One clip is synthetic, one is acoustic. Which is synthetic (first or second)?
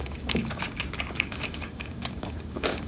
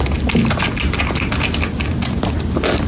first